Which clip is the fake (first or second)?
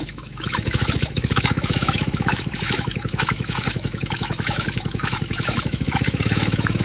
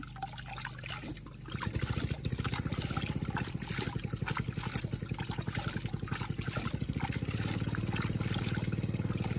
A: first